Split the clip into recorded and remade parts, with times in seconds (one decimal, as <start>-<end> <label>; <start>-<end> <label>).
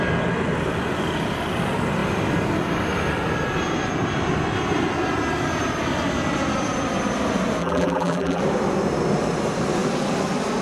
0.0-7.6 recorded; 7.6-8.4 remade; 8.4-10.6 recorded